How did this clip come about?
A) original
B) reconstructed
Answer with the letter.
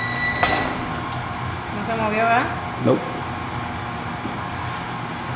A